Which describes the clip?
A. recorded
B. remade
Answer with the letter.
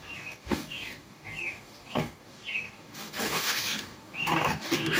B